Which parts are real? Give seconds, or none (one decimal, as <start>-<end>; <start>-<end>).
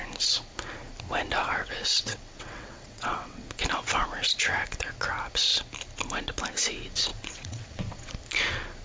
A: 0.0-1.4; 3.5-7.1; 8.1-8.8